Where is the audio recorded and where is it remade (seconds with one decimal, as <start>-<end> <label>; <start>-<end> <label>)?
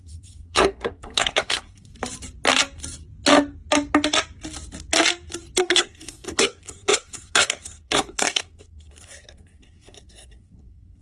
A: 0.0-1.9 remade; 1.9-5.6 recorded; 5.6-11.0 remade